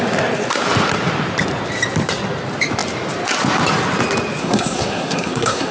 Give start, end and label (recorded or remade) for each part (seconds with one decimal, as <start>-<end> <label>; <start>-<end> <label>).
0.0-4.4 recorded; 4.4-5.7 remade